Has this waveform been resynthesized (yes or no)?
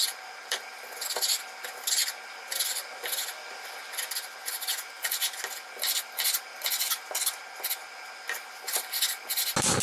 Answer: no